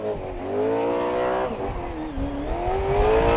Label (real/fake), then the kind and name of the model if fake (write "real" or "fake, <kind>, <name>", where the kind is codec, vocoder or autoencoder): real